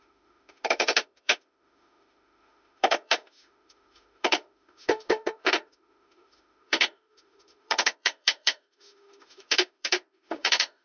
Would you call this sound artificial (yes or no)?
yes